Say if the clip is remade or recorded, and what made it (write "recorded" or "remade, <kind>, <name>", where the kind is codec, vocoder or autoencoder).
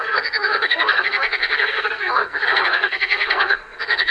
remade, codec, SNAC